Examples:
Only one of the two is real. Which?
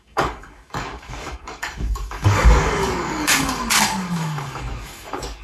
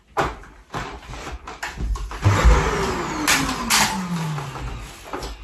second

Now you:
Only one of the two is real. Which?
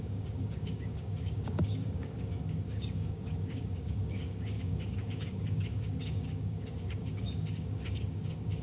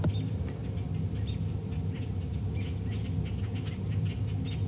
second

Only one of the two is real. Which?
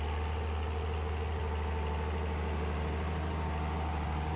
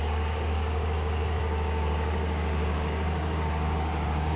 first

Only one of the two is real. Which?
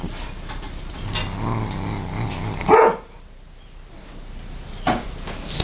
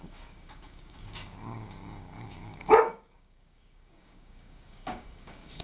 first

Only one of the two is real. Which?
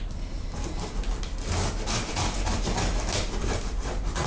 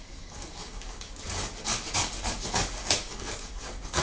first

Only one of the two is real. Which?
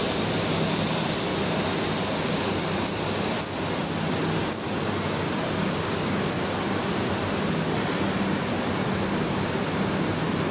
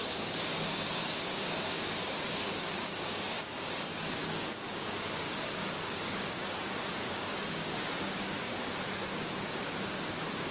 first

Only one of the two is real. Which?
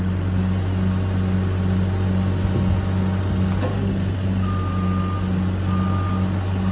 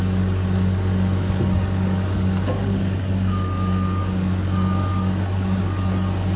first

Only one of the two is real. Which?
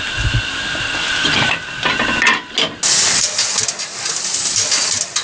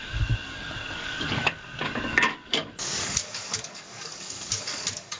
first